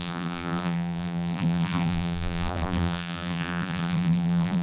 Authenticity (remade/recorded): remade